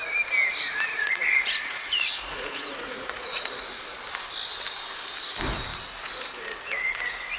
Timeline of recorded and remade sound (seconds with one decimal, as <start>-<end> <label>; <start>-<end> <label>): 0.0-0.9 recorded; 0.9-4.0 remade; 4.0-5.7 recorded; 5.7-7.4 remade